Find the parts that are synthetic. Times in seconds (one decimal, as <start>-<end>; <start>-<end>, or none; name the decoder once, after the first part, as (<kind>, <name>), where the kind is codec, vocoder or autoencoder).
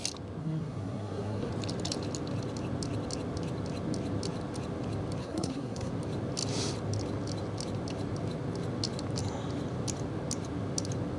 0.4-1.5 (codec, SNAC); 5.2-5.9